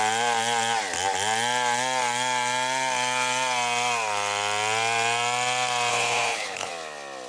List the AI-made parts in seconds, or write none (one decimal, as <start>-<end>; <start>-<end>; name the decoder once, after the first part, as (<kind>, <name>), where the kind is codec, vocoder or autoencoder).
5.9-6.7 (codec, HILCodec)